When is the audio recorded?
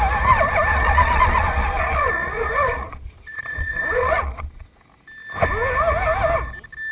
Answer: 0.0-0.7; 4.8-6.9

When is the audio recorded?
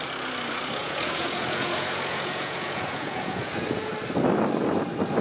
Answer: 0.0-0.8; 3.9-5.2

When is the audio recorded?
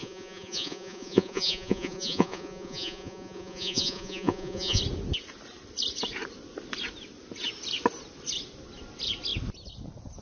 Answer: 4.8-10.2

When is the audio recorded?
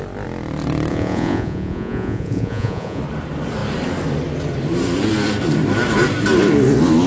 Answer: 0.0-0.9; 3.0-7.1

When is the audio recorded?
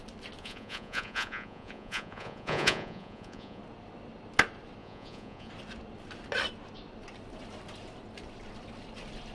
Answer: 0.0-0.4; 3.6-4.8; 5.5-9.3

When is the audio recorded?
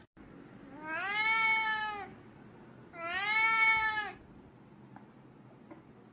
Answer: 0.0-6.1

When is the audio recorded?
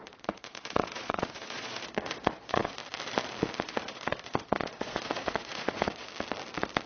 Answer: 2.8-3.6; 6.1-6.9